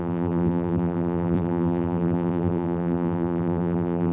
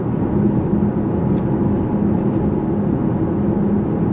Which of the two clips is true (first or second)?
second